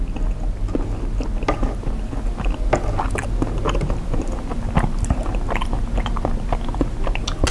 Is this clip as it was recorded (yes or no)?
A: yes